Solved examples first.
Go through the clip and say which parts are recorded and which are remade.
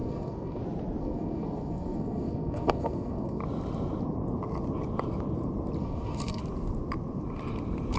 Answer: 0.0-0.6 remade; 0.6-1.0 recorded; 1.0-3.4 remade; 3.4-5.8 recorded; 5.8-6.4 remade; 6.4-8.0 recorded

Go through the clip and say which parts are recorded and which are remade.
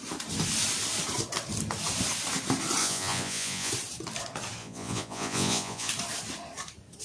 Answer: 0.0-2.8 recorded; 2.8-3.7 remade; 3.7-4.6 recorded; 4.6-5.9 remade; 5.9-7.0 recorded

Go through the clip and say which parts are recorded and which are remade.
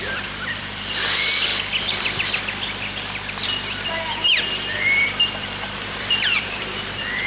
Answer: 0.0-1.5 remade; 1.5-4.4 recorded; 4.4-7.3 remade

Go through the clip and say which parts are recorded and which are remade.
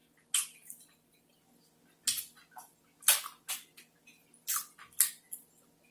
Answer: 0.0-5.9 recorded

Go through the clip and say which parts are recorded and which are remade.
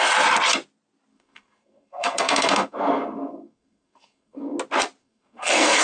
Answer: 0.0-1.1 recorded; 1.1-4.6 remade; 4.6-5.0 recorded; 5.0-5.8 remade